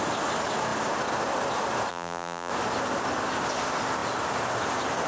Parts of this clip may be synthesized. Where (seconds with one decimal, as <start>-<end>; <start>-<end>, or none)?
1.9-2.5